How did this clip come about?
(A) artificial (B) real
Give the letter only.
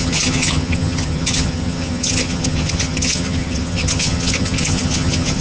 A